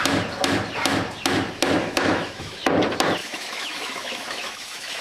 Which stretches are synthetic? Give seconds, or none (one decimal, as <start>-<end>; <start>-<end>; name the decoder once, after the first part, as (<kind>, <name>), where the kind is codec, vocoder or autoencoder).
1.8-2.6 (autoencoder, DAC-VAE); 3.2-5.0